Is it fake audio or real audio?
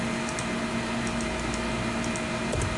real